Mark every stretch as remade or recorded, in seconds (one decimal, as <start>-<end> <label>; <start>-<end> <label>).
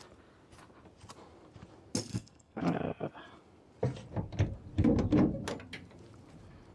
0.0-2.1 recorded; 2.1-2.6 remade; 2.6-6.7 recorded